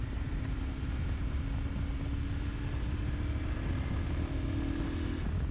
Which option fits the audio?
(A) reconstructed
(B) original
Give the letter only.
B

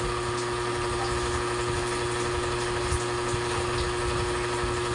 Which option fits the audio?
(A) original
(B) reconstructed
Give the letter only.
A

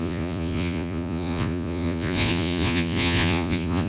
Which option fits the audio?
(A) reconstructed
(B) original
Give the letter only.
A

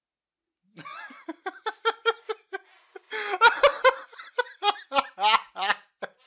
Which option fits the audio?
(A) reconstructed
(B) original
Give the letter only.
B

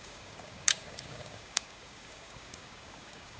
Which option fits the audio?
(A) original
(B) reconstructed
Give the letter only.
B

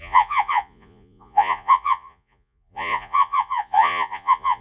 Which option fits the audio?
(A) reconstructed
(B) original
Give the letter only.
A